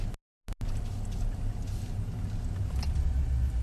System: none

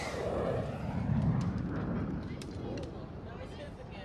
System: vocoder, BigVGAN v2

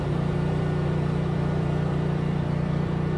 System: vocoder, BigVGAN v2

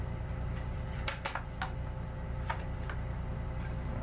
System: none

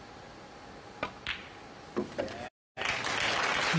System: none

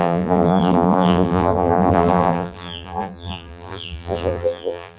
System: vocoder, BigVGAN v2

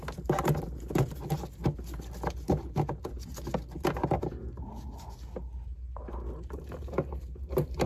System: none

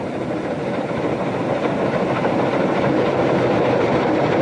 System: vocoder, BigVGAN v2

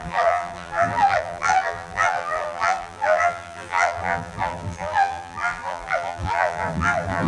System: vocoder, BigVGAN v2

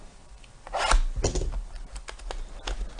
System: none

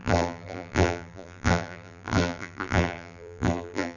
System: vocoder, BigVGAN v2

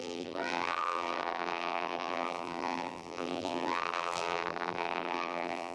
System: vocoder, BigVGAN v2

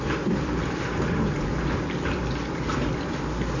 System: vocoder, BigVGAN v2